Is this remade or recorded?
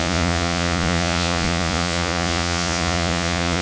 remade